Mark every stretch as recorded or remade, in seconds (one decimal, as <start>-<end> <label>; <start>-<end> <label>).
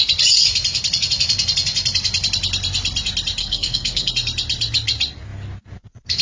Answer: 0.0-3.4 recorded; 3.4-4.1 remade; 4.1-6.2 recorded